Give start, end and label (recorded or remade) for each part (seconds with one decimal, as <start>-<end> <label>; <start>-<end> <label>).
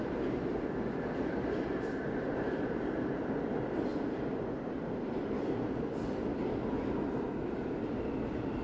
0.0-8.6 recorded